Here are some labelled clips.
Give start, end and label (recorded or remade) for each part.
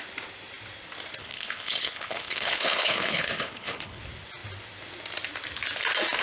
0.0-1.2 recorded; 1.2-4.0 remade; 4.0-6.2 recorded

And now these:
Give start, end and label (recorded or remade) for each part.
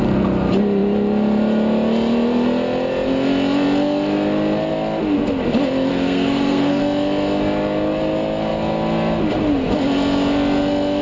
0.0-5.9 recorded; 5.9-6.8 remade; 6.8-11.0 recorded